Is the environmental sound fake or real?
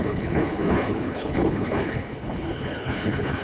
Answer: fake